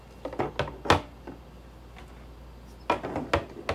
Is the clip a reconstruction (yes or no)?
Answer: no